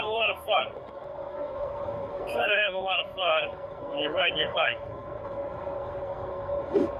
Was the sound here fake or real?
fake